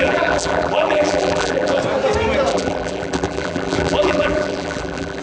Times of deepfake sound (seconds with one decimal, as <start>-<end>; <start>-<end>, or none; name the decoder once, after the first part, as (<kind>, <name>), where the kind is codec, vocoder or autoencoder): 0.0-1.8 (vocoder, BigVGAN v2); 2.5-5.2